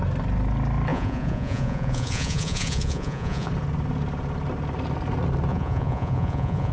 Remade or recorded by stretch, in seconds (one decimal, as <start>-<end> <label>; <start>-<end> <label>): 0.0-0.9 recorded; 0.9-3.5 remade; 3.5-5.5 recorded; 5.5-6.7 remade